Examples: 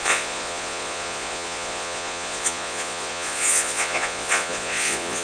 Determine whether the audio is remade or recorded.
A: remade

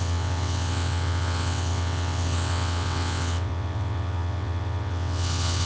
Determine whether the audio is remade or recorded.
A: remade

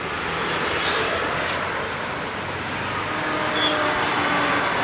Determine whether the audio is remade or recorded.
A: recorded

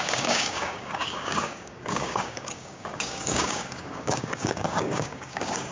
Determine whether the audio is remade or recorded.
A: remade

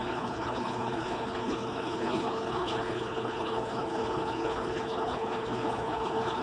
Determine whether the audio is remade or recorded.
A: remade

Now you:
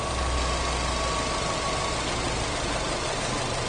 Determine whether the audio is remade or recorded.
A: recorded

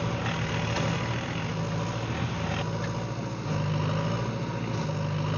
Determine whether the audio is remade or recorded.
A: recorded